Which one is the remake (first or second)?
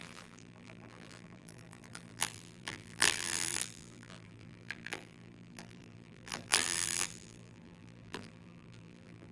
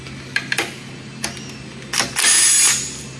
first